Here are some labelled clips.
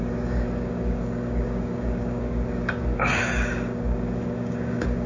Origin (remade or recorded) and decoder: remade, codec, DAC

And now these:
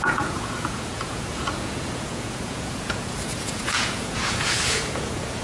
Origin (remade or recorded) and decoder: remade, vocoder, Vocos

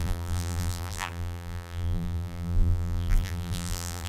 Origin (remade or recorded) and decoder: remade, vocoder, BigVGAN v2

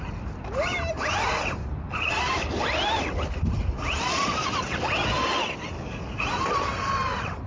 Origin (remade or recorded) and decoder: recorded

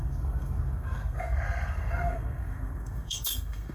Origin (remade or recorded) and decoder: remade, codec, SNAC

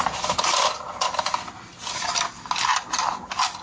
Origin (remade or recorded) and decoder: recorded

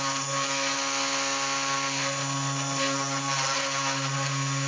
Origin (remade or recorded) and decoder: recorded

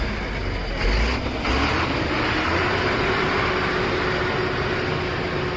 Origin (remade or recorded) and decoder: recorded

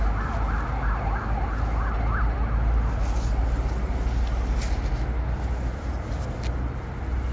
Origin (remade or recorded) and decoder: recorded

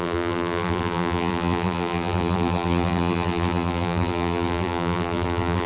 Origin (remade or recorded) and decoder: remade, vocoder, BigVGAN v2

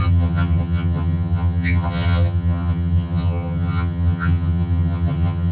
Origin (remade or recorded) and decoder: remade, vocoder, HiFi-GAN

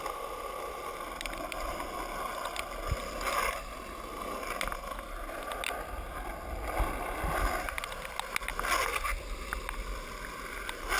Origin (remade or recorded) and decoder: recorded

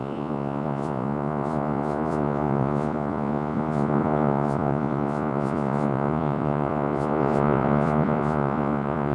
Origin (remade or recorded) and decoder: remade, vocoder, Vocos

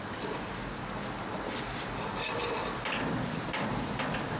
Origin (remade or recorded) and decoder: recorded